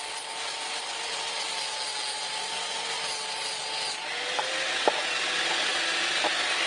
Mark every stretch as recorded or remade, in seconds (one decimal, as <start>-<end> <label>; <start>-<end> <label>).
0.0-6.7 recorded

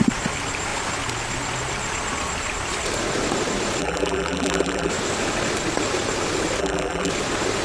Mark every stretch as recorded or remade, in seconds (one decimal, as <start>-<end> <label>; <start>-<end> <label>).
0.0-3.8 recorded; 3.8-4.9 remade; 4.9-6.6 recorded; 6.6-7.1 remade; 7.1-7.6 recorded

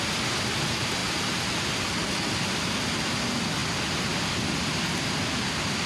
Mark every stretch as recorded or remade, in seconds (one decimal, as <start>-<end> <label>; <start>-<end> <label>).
0.0-5.9 recorded

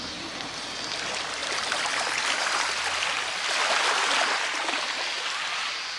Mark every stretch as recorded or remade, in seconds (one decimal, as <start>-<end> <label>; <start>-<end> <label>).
0.0-1.4 recorded; 1.4-4.2 remade; 4.2-6.0 recorded

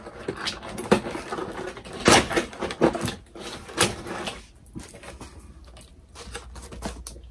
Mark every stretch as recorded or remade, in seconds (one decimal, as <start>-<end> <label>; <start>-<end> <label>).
0.0-7.3 recorded

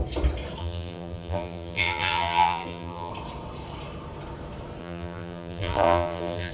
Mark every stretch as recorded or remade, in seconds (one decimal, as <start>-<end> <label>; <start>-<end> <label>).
0.0-0.6 recorded; 0.6-3.1 remade; 3.1-4.8 recorded; 4.8-6.5 remade

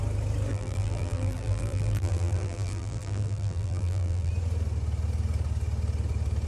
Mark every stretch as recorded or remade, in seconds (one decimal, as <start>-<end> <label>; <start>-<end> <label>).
0.0-0.5 recorded; 0.5-4.3 remade; 4.3-6.5 recorded

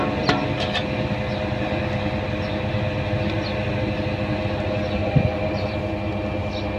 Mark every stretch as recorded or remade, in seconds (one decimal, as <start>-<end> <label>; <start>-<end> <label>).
0.0-5.0 recorded; 5.0-5.8 remade; 5.8-6.8 recorded